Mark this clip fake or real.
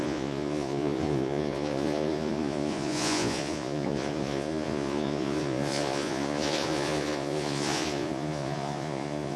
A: fake